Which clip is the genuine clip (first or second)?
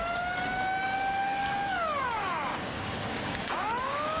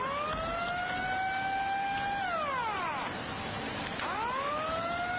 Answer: second